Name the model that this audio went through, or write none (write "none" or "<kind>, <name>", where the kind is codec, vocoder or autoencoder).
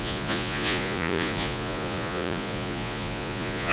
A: vocoder, Vocos